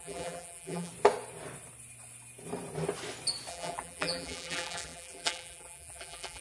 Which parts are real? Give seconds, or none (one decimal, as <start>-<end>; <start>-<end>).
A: 0.9-3.5